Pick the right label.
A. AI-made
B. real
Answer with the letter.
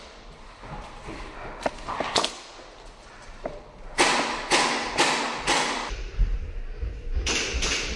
B